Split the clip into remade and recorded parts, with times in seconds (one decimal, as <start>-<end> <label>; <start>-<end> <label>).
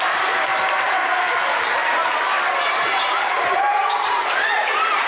0.0-0.5 remade; 0.5-1.4 recorded; 1.4-1.8 remade; 1.8-2.6 recorded; 2.6-5.1 remade